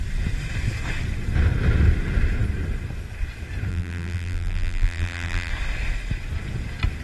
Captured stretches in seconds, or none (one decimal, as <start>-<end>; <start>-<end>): 0.0-3.7; 5.5-7.0